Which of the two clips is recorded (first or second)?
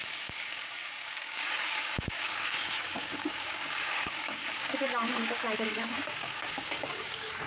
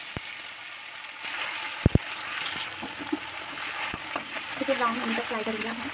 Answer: second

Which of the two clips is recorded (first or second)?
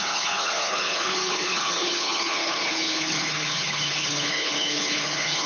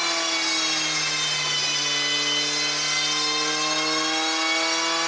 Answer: second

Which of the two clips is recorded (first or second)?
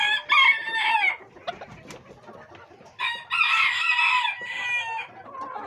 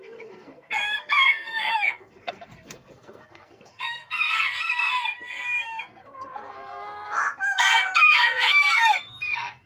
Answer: first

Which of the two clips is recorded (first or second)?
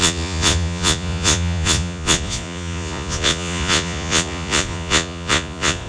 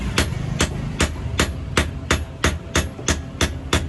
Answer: second